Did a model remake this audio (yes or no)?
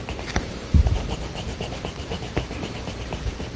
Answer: yes